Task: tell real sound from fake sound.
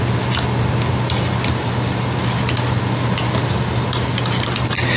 real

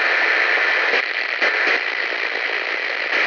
real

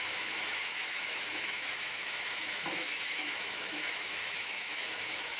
fake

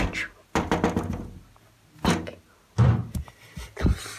real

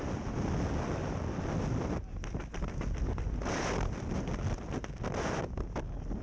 real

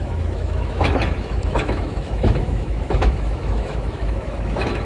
fake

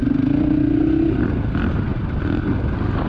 real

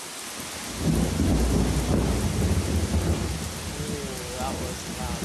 real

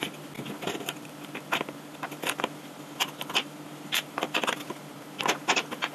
real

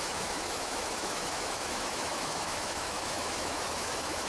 fake